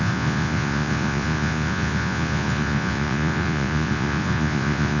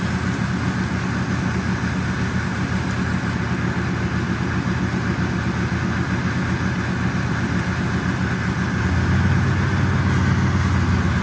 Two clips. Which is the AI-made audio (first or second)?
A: first